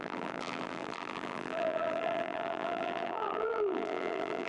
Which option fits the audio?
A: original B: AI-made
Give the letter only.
B